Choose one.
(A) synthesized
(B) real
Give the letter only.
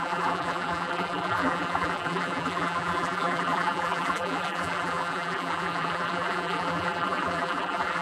A